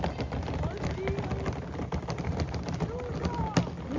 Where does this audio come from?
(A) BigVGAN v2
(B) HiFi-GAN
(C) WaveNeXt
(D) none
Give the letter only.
D